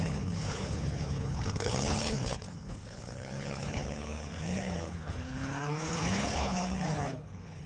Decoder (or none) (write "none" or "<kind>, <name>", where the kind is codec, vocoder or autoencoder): codec, HILCodec